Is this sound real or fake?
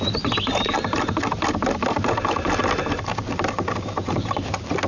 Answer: real